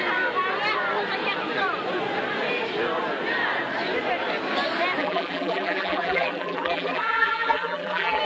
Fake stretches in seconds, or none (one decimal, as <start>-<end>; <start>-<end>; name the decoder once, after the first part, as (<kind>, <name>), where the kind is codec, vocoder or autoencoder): 5.0-8.2 (vocoder, BigVGAN v2)